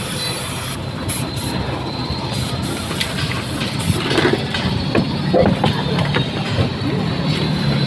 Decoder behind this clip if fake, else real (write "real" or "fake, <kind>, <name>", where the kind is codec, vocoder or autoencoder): real